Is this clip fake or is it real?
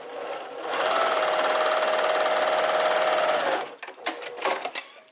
real